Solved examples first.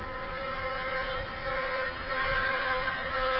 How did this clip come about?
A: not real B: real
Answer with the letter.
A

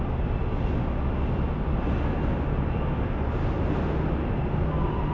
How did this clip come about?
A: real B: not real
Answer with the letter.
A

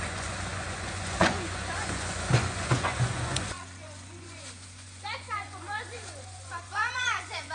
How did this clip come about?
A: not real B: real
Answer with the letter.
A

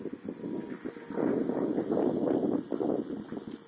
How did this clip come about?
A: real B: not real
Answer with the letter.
A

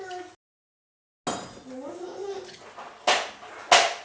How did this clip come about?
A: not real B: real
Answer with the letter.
B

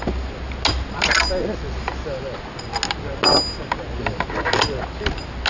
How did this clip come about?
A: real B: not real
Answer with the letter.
A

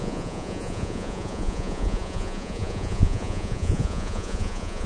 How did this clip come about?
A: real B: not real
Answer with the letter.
B